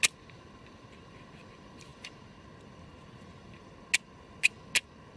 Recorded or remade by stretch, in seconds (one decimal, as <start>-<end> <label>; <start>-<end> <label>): 0.0-5.2 recorded